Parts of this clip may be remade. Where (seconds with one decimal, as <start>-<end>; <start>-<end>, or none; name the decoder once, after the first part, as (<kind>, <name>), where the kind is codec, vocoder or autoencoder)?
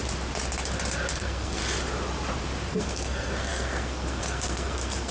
1.1-1.6 (codec, SNAC); 2.7-5.1